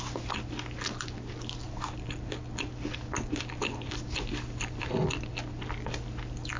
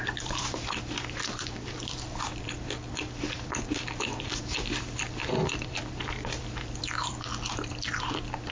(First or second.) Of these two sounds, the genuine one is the first